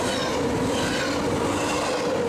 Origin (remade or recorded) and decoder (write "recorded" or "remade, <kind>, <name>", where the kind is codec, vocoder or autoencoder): recorded